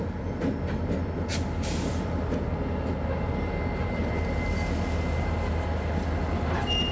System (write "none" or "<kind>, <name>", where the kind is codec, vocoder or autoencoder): none